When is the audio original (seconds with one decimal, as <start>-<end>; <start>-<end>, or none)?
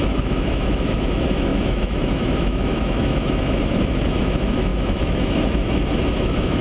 none